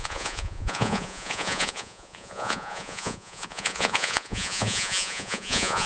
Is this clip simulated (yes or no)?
yes